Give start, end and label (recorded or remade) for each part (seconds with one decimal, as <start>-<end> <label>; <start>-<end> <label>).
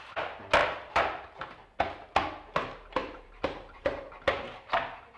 0.0-0.6 recorded; 0.6-1.8 remade; 1.8-3.0 recorded; 3.0-4.1 remade; 4.1-5.2 recorded